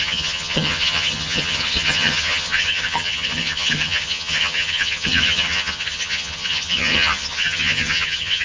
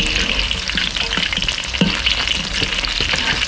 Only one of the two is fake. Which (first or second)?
first